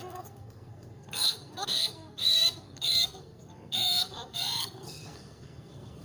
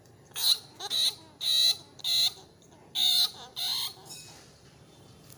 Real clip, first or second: second